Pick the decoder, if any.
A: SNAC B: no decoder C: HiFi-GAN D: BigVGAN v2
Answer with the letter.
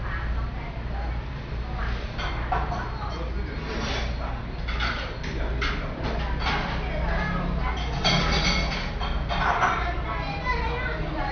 B